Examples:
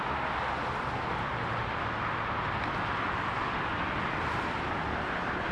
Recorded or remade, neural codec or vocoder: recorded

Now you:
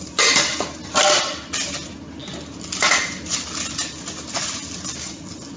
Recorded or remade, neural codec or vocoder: recorded